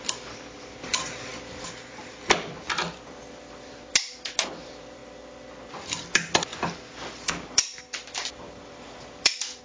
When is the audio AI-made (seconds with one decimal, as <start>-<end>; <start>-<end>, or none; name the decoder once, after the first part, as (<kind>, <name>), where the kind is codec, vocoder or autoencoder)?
0.0-1.3 (vocoder, BigVGAN v2); 2.1-3.9; 4.5-5.0; 5.7-6.5; 7.3-9.6